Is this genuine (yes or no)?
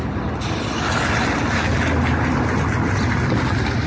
yes